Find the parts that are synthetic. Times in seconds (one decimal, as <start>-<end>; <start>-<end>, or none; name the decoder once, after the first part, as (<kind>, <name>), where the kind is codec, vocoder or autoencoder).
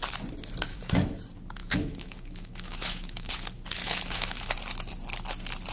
0.7-1.2 (autoencoder, DAC-VAE); 1.6-3.3; 3.8-4.5